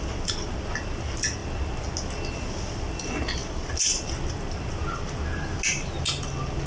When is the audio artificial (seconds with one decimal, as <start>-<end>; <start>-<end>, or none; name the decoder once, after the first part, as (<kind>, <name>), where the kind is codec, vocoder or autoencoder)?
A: none